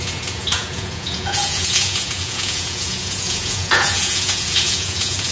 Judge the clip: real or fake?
fake